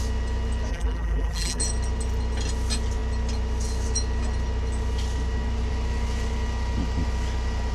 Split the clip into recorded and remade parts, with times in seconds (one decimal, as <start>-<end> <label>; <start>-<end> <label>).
0.0-0.7 recorded; 0.7-1.6 remade; 1.6-7.7 recorded